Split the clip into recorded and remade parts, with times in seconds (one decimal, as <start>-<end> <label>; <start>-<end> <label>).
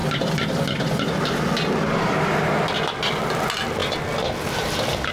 0.0-5.1 recorded